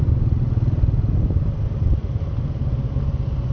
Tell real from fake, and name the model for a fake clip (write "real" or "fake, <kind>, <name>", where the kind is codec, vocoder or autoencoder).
real